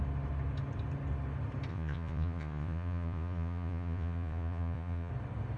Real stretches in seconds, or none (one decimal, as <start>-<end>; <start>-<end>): 0.0-1.7; 5.1-5.6